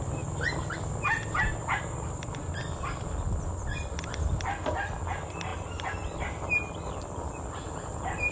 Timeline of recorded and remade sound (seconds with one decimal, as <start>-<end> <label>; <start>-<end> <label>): 0.0-8.3 recorded

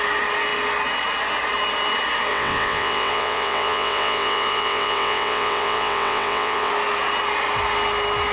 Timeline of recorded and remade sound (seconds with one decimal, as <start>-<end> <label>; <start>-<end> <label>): 0.0-2.3 recorded; 2.3-6.7 remade; 6.7-8.3 recorded

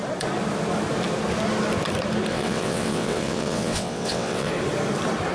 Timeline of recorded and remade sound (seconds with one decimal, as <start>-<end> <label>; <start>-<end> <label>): 0.0-2.3 recorded; 2.3-4.5 remade; 4.5-5.3 recorded

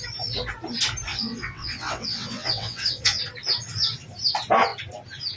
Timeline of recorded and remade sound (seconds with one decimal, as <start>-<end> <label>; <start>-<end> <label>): 0.0-1.1 recorded; 1.1-3.2 remade; 3.2-5.4 recorded